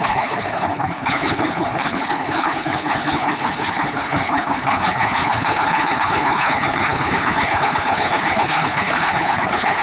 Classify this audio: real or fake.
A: fake